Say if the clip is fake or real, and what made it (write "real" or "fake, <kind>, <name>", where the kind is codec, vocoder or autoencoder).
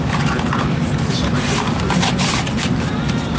fake, vocoder, BigVGAN v2